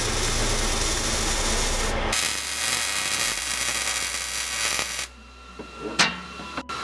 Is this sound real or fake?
real